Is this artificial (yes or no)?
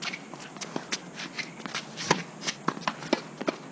no